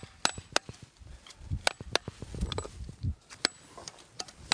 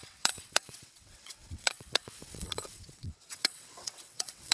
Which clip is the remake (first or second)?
second